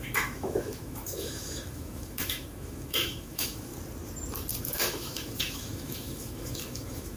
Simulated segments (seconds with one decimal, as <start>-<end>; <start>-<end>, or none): 0.0-3.7; 4.6-7.2